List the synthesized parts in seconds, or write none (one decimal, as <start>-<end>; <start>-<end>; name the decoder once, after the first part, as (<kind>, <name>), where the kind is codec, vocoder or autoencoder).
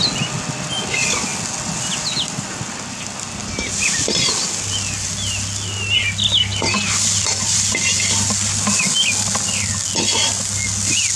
none